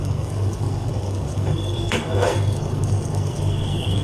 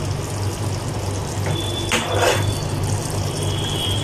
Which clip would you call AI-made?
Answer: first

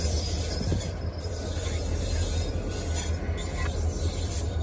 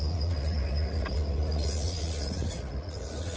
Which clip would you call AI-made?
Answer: second